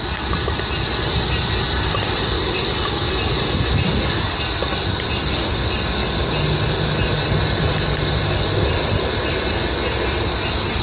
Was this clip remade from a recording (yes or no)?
no